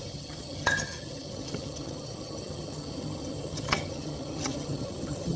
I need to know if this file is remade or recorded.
remade